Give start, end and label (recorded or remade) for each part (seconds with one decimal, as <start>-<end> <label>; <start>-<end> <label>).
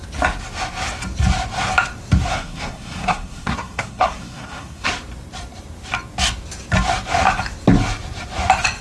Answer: 0.0-2.3 recorded; 2.3-4.9 remade; 4.9-8.8 recorded